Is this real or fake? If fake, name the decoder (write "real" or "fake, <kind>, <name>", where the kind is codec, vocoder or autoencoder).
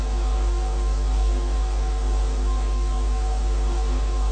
fake, codec, DAC